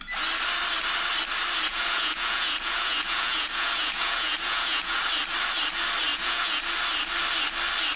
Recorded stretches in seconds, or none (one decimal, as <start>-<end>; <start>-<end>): 0.0-1.7; 5.0-6.1; 6.6-8.0

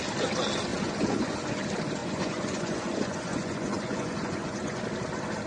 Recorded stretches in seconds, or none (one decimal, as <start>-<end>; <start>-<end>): 0.0-0.7; 1.6-2.0; 4.8-5.5